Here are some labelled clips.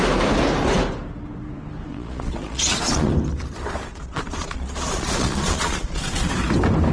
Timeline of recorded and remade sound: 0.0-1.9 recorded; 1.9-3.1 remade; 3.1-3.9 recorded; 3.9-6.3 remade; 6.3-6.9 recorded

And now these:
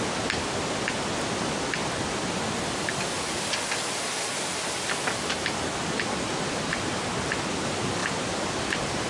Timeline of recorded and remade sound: 0.0-9.1 recorded

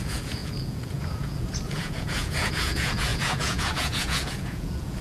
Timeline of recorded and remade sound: 0.0-5.0 remade

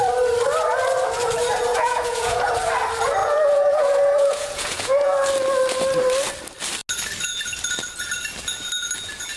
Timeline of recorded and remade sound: 0.0-1.7 recorded; 1.7-2.5 remade; 2.5-3.2 recorded; 3.2-5.1 remade; 5.1-9.4 recorded

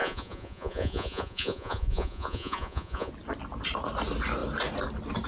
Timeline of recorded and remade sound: 0.0-3.1 remade; 3.1-5.3 recorded